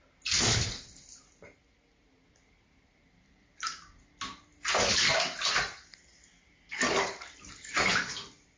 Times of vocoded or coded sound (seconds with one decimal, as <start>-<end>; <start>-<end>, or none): none